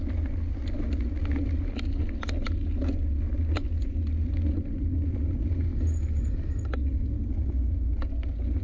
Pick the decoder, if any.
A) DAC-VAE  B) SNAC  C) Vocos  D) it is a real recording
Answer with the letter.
D